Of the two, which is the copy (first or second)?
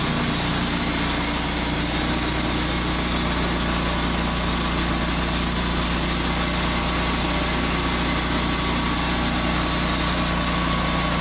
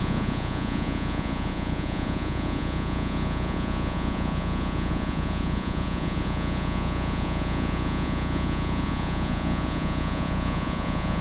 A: second